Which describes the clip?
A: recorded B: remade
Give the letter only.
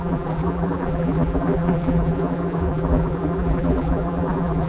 B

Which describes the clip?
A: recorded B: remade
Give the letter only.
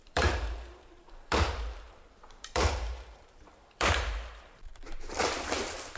B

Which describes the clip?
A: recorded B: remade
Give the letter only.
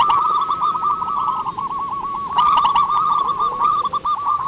A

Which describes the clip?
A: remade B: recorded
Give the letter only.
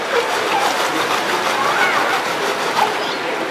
A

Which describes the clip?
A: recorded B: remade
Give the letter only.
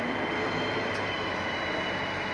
A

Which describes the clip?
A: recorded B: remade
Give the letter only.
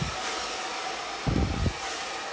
A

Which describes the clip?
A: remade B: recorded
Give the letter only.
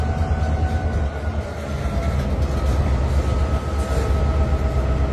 B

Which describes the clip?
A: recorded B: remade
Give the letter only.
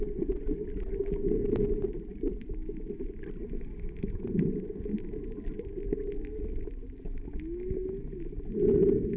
A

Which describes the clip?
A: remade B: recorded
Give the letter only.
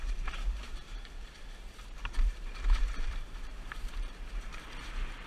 A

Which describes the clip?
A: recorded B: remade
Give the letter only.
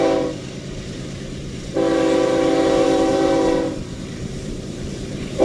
B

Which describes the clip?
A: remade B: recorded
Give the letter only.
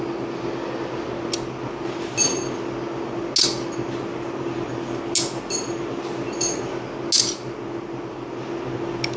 B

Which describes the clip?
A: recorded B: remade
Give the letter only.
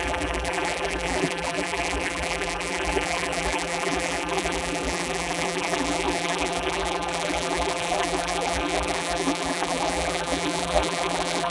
B